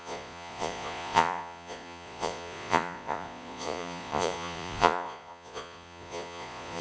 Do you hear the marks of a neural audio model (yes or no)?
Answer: yes